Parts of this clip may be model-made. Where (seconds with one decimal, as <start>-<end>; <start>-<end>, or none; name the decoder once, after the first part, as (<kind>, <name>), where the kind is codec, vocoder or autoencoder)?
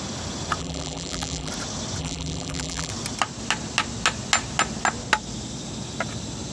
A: 0.6-1.5 (vocoder, BigVGAN v2); 2.0-2.9